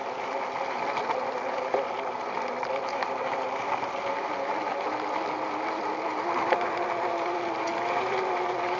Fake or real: real